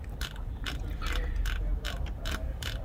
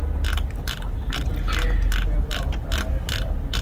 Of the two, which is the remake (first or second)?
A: first